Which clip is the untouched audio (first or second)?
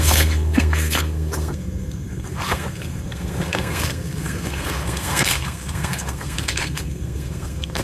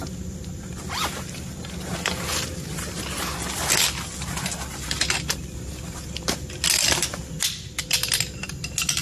second